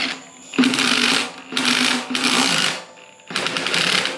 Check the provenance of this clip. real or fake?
real